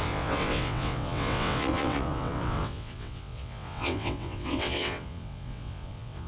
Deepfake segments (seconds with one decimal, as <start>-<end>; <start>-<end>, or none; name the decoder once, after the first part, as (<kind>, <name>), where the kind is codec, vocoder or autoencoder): 0.0-6.3 (vocoder, WaveNeXt)